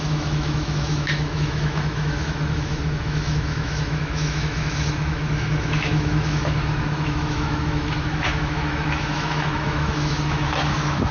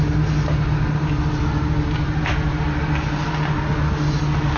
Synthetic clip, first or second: first